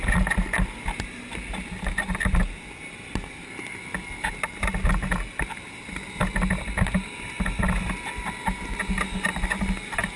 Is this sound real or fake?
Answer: real